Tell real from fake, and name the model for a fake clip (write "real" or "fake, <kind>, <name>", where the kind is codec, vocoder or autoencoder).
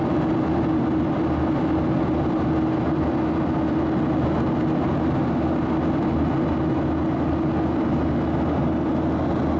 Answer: real